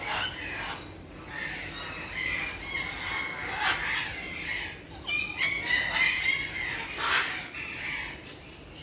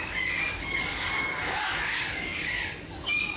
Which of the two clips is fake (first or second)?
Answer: second